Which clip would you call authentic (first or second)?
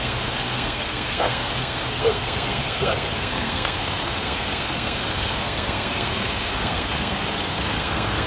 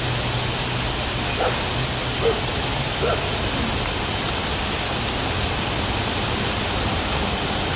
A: second